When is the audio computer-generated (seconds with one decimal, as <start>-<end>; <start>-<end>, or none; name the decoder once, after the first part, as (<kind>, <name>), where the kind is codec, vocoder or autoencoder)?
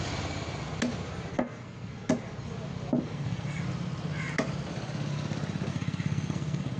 1.3-2.1 (codec, SNAC); 3.0-3.6; 5.7-6.8